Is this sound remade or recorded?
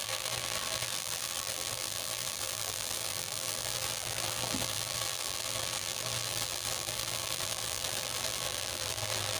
remade